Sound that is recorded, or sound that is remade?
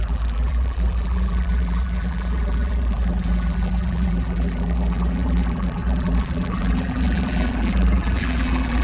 remade